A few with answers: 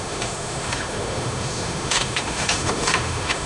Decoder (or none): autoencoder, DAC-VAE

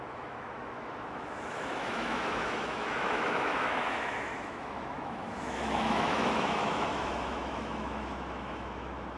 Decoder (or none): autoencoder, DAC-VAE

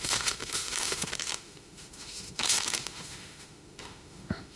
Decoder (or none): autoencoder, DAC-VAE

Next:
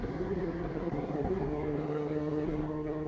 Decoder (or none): codec, SNAC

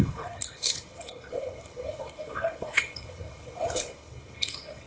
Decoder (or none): codec, HILCodec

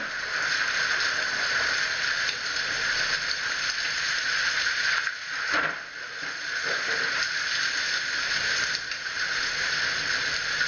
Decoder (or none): none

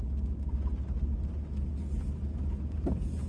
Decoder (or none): none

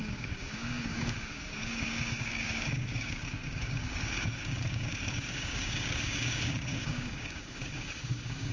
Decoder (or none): codec, DAC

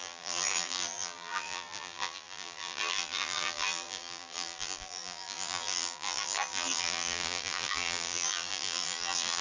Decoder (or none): vocoder, BigVGAN v2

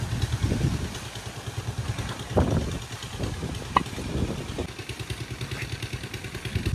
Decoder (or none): none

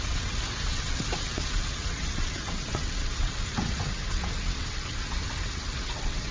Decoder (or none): vocoder, WaveNeXt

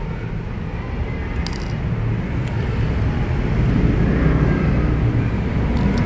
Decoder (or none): none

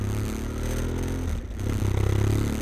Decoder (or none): none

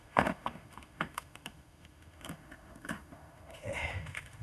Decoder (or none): autoencoder, DAC-VAE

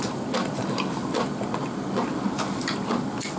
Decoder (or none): none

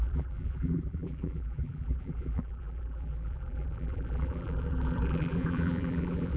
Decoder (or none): vocoder, BigVGAN v2